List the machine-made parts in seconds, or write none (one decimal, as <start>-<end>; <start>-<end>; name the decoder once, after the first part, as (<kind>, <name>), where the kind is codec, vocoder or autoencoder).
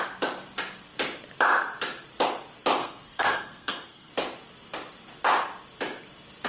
2.8-4.1 (codec, SNAC)